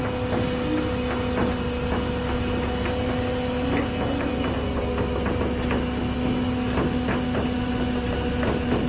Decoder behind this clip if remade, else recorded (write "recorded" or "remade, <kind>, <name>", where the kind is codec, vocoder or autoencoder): recorded